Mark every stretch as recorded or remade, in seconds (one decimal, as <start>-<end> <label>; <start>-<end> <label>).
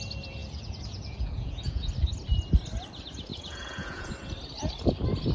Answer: 0.0-0.4 recorded; 0.4-1.9 remade; 1.9-3.3 recorded; 3.3-4.1 remade; 4.1-5.3 recorded